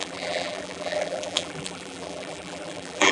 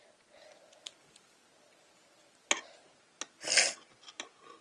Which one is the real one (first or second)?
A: second